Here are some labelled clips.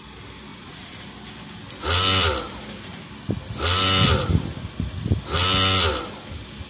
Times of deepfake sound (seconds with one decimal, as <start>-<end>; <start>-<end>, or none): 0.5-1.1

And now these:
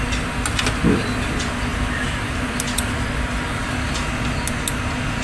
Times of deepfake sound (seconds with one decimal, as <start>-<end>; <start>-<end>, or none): none

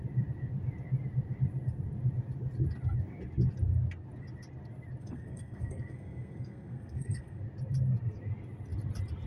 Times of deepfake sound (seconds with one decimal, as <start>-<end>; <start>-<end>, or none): 5.0-7.4

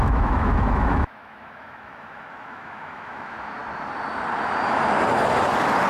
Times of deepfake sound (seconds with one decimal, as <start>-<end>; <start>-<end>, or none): 0.0-3.6